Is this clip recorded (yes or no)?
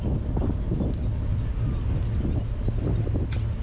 yes